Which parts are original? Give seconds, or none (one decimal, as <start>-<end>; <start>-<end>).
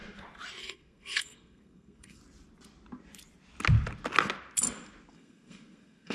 0.0-0.6; 2.2-5.1